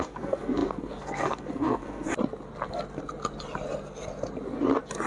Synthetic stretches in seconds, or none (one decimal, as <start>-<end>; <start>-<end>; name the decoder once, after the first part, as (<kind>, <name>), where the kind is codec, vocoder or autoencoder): 0.0-2.1 (codec, SNAC)